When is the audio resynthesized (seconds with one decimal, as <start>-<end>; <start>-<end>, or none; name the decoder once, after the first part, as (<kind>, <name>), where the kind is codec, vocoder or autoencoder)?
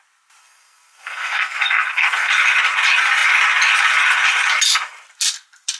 0.4-2.3 (codec, SNAC)